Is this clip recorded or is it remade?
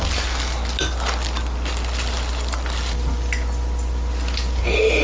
recorded